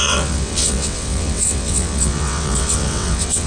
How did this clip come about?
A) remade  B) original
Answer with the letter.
A